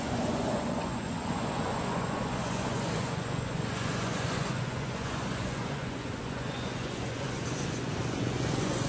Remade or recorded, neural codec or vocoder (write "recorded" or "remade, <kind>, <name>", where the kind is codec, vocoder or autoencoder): remade, vocoder, Vocos